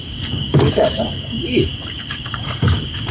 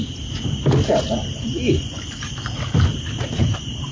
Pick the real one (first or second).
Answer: second